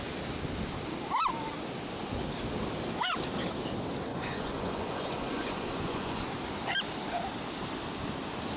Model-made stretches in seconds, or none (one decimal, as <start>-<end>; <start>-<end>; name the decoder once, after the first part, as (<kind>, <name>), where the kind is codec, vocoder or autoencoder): 4.1-6.2 (vocoder, Vocos)